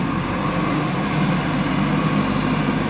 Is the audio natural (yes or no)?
yes